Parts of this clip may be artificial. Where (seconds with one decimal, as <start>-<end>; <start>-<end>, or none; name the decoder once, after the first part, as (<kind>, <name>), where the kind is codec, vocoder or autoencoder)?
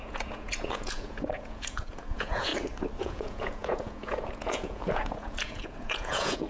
0.0-2.5 (vocoder, Vocos); 3.0-6.5